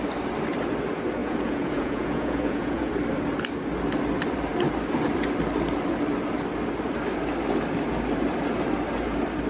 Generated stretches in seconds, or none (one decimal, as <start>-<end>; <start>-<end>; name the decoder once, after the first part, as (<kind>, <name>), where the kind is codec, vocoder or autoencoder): 1.2-2.9 (vocoder, Vocos)